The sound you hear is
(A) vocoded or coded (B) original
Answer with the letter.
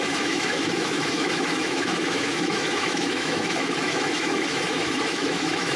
A